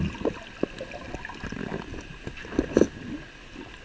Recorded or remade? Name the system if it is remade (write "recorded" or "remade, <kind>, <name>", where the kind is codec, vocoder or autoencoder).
recorded